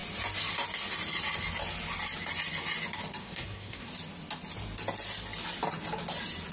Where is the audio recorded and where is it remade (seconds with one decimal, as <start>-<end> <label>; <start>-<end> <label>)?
0.0-3.2 recorded; 3.2-3.9 remade; 3.9-6.5 recorded